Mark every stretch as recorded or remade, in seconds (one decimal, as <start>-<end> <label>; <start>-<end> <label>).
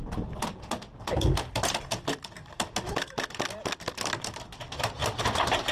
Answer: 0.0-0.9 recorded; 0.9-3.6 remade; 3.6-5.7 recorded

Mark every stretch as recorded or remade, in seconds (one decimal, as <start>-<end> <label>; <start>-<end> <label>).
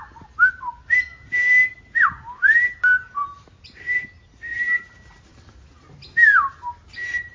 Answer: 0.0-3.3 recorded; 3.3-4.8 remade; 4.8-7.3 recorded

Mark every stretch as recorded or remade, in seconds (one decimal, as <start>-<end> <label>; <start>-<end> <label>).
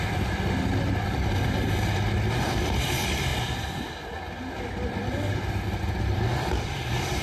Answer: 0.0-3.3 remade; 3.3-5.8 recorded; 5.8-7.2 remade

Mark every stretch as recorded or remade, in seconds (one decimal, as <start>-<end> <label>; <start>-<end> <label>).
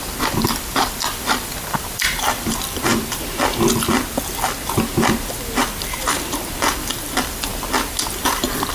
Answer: 0.0-2.9 remade; 2.9-6.6 recorded; 6.6-7.5 remade; 7.5-8.2 recorded; 8.2-8.7 remade